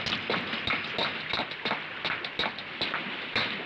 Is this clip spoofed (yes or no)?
no